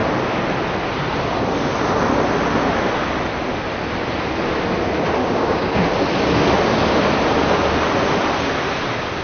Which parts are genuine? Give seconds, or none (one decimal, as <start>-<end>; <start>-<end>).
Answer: 0.0-5.2; 5.9-9.2